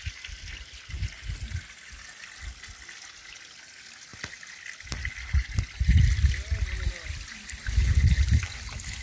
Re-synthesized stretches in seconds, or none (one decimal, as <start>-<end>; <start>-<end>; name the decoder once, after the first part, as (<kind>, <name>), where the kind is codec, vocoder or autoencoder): none